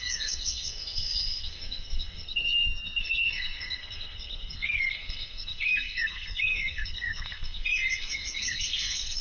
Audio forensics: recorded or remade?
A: remade